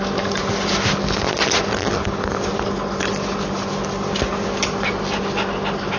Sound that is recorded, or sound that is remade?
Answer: recorded